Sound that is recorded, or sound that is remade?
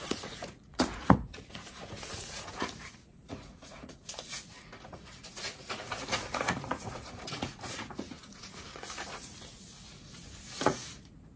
remade